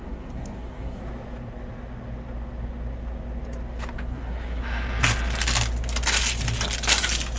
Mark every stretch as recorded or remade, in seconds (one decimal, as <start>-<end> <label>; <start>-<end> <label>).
0.0-1.0 remade; 1.0-4.1 recorded; 4.1-4.6 remade; 4.6-7.4 recorded